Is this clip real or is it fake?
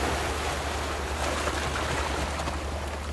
real